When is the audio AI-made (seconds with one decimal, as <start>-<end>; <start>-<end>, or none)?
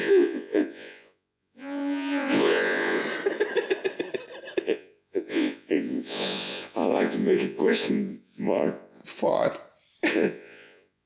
0.0-3.0; 4.6-9.0; 10.1-11.1